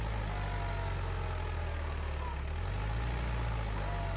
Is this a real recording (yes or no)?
yes